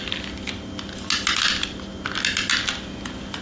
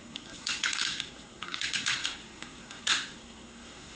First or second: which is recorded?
first